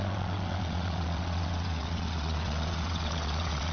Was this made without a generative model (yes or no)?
no